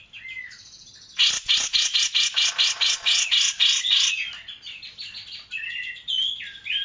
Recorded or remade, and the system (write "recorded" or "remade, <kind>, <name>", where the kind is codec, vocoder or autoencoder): recorded